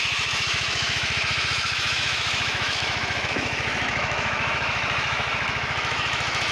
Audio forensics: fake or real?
fake